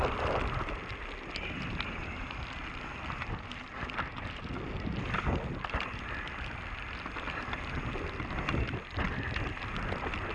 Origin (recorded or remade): recorded